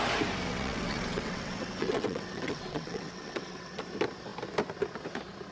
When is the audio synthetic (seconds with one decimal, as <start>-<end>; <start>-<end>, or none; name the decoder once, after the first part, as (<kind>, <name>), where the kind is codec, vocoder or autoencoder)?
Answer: 0.5-3.8 (vocoder, WaveNeXt)